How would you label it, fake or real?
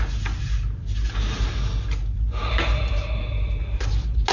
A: real